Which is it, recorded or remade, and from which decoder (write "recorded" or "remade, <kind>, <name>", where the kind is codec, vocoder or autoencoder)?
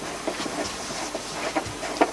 recorded